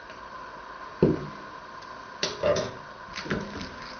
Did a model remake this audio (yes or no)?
no